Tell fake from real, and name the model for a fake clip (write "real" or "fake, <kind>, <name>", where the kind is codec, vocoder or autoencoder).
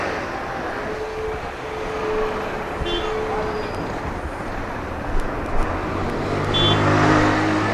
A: real